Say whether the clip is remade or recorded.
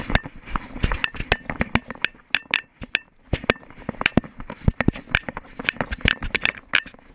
recorded